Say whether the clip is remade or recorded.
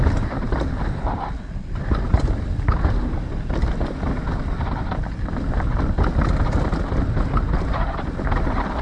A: recorded